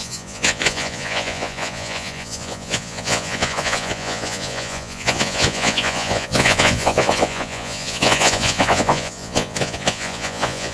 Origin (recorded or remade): remade